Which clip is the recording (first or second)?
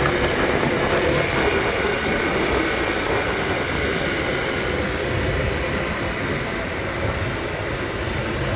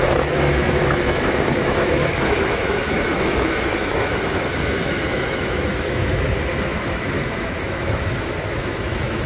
first